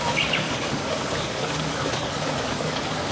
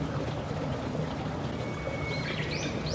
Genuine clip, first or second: second